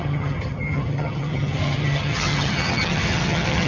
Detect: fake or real fake